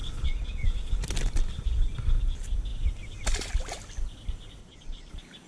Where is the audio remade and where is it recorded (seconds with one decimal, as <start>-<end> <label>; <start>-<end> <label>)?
0.0-0.9 remade; 0.9-4.6 recorded; 4.6-5.1 remade; 5.1-5.5 recorded